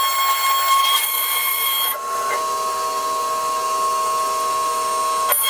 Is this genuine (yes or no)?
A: yes